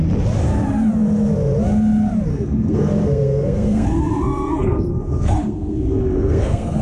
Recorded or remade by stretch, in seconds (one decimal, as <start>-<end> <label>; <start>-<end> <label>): 0.0-2.3 recorded; 2.3-6.8 remade